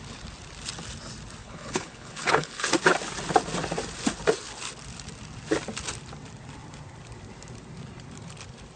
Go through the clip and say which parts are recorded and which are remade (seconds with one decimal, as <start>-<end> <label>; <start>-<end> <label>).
0.0-1.4 recorded; 1.4-2.7 remade; 2.7-8.8 recorded